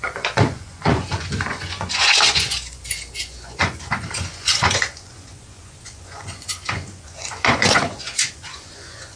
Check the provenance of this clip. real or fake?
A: fake